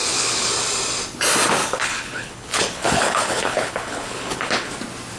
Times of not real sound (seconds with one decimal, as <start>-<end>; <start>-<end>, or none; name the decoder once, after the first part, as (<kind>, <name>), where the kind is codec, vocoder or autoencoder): 0.0-0.5 (codec, HILCodec); 1.6-4.7